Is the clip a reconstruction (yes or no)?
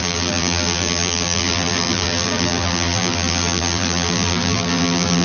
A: yes